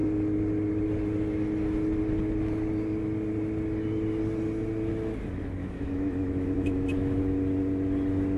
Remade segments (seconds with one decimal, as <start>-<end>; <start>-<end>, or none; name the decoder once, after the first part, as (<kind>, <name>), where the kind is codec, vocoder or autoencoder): 5.6-7.2 (autoencoder, DAC-VAE)